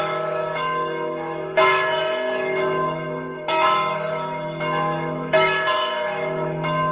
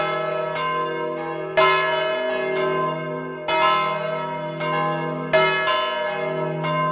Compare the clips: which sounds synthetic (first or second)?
first